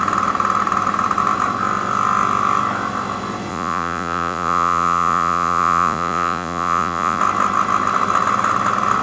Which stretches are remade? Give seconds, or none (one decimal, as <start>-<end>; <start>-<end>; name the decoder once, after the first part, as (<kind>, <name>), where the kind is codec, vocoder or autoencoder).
3.5-7.2 (vocoder, Vocos)